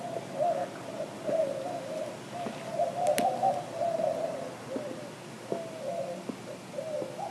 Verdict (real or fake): real